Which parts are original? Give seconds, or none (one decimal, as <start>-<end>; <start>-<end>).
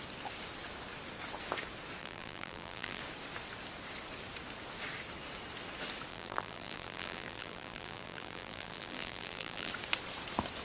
0.0-2.0; 3.0-6.1; 9.7-10.6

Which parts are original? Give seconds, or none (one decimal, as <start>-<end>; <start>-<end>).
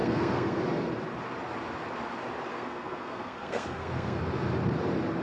0.6-2.5; 4.2-5.2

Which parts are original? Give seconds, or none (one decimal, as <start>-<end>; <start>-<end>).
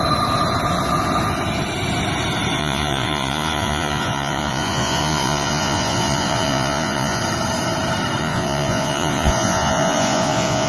0.0-2.6; 7.2-8.2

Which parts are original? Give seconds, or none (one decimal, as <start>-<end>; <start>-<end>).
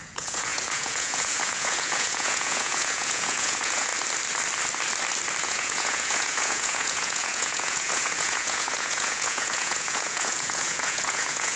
3.9-5.4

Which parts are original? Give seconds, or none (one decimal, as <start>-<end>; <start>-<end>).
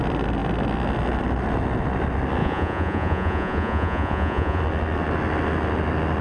0.0-2.4; 4.6-6.2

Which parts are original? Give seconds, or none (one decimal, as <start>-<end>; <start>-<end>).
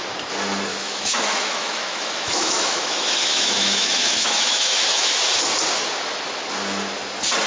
0.0-0.7; 5.2-7.5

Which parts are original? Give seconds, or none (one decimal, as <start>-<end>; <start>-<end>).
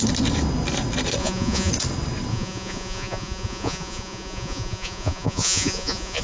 0.0-1.2; 1.7-2.3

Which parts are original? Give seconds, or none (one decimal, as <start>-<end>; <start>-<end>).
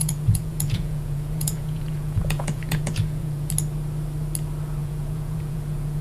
3.5-4.8